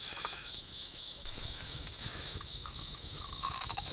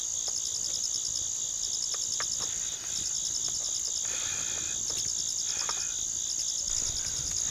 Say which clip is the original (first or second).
second